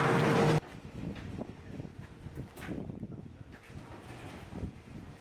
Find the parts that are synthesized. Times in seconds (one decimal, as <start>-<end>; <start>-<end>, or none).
1.9-3.1